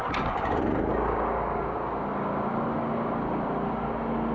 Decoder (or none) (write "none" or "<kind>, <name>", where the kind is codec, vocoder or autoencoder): none